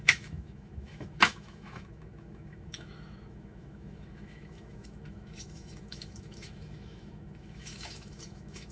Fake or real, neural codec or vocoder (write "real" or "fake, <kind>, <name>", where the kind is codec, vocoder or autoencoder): fake, autoencoder, DAC-VAE